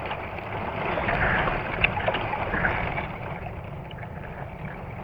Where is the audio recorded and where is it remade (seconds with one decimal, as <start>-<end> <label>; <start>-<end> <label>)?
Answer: 0.0-2.3 recorded; 2.3-4.3 remade; 4.3-5.0 recorded